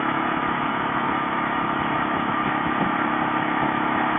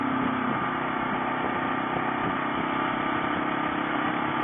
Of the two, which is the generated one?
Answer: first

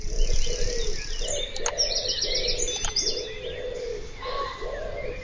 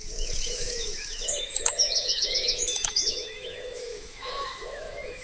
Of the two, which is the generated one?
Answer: second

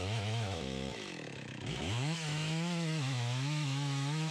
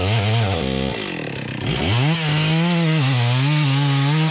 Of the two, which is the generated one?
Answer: first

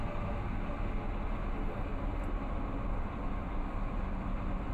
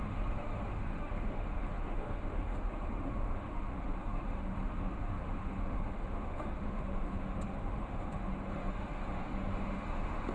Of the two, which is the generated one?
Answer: second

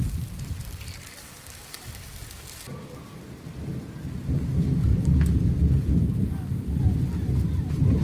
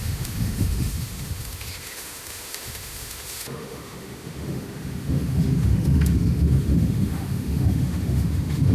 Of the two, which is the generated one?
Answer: second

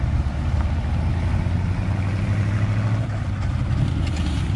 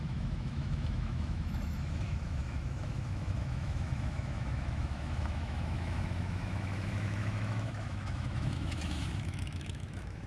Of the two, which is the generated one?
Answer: second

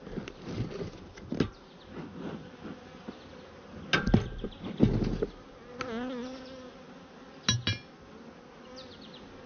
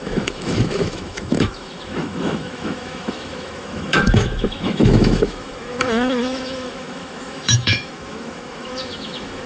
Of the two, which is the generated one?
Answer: second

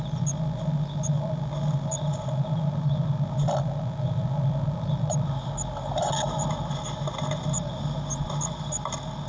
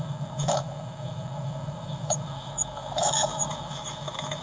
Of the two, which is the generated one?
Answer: second